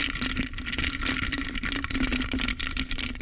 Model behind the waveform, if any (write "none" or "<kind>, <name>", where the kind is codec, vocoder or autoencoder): none